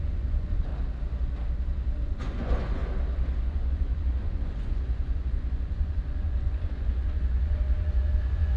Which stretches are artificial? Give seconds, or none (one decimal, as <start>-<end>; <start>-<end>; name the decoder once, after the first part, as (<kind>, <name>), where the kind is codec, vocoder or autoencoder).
0.0-0.7 (vocoder, Vocos); 2.0-2.8; 3.4-8.6